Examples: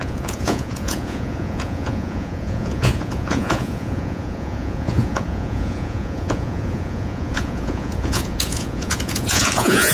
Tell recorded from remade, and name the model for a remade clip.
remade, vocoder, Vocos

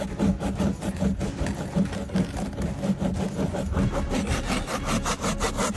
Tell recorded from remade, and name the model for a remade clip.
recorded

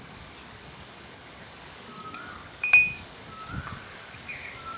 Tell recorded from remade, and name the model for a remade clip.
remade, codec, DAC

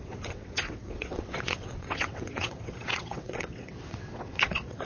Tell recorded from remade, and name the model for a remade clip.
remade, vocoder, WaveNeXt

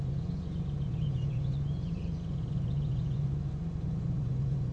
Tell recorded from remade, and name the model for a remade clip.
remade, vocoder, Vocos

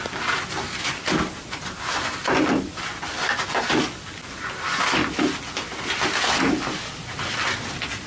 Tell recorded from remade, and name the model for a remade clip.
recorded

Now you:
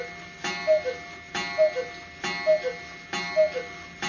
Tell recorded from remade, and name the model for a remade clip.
recorded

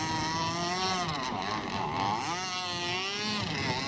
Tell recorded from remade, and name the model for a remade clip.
recorded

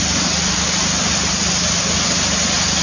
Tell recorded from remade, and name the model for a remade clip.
recorded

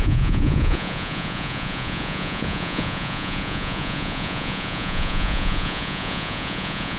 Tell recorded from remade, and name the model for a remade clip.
remade, vocoder, Vocos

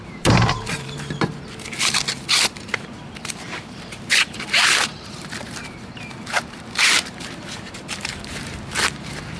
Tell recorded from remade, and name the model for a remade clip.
remade, vocoder, BigVGAN v2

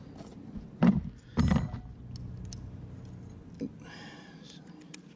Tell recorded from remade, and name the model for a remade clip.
recorded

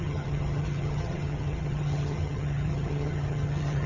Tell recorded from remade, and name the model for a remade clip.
remade, vocoder, HiFi-GAN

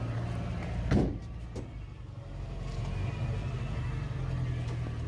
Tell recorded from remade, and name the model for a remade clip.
recorded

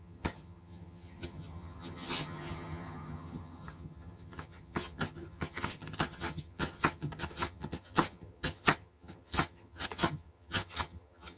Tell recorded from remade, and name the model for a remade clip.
remade, vocoder, HiFi-GAN